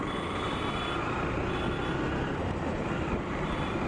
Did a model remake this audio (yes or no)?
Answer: no